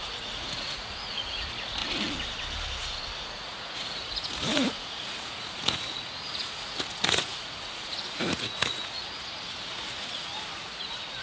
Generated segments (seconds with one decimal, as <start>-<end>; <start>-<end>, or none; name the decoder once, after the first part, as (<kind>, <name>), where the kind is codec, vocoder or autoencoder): 0.0-1.8 (vocoder, Vocos); 3.1-11.2